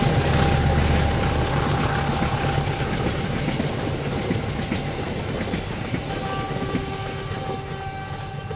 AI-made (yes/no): no